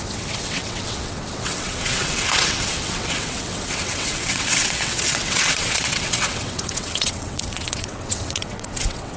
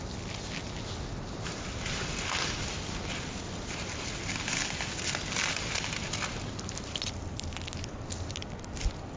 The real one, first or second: second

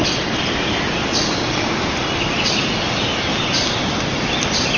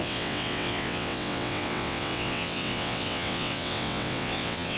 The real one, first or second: first